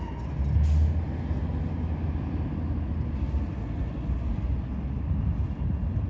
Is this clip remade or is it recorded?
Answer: recorded